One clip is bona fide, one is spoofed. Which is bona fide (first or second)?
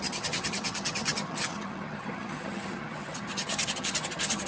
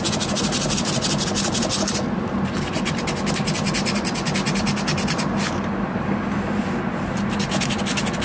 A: second